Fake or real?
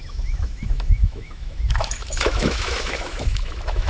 fake